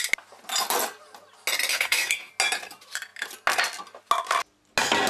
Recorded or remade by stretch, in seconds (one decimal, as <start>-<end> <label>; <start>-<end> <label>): 0.0-1.7 recorded; 1.7-2.3 remade; 2.3-5.1 recorded